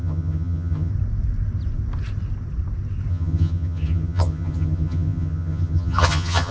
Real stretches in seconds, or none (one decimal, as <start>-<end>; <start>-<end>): 0.9-3.1